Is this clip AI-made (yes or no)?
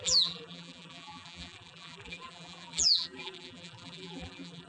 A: yes